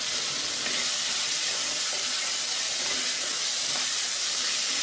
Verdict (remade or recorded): recorded